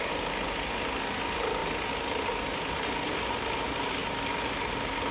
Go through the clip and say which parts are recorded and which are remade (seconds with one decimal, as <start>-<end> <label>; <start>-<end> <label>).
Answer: 0.0-5.1 recorded